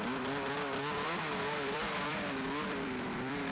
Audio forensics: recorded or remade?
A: remade